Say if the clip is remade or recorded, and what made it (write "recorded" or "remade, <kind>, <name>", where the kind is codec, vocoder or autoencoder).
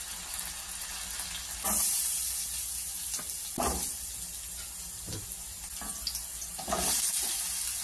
recorded